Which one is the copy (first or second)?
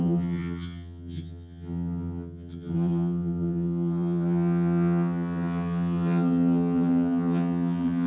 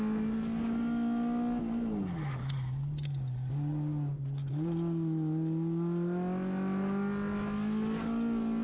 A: first